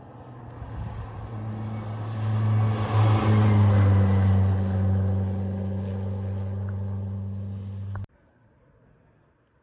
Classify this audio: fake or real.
real